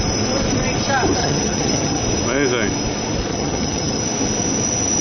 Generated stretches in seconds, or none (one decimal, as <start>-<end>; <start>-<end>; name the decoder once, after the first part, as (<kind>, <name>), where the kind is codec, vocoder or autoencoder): 1.2-2.0 (vocoder, HiFi-GAN); 3.3-4.0